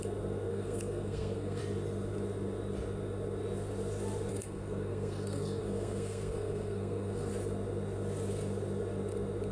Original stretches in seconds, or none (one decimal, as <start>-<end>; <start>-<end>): 0.0-0.5; 1.6-4.3; 7.3-9.5